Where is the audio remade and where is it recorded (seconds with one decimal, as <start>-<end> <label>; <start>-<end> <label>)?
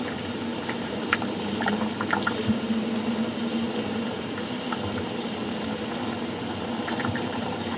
0.0-2.8 remade; 2.8-3.4 recorded; 3.4-7.8 remade